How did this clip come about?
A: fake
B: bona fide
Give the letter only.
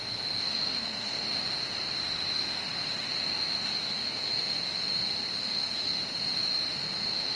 A